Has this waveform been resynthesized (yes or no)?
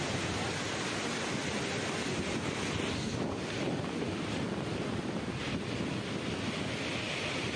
no